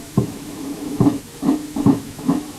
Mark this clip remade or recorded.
remade